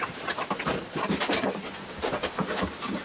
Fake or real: real